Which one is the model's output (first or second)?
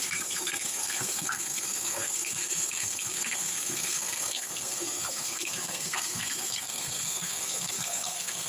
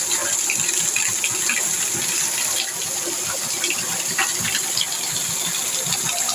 first